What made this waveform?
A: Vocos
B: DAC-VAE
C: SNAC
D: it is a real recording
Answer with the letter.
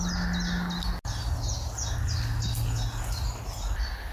D